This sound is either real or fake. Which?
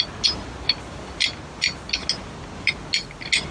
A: real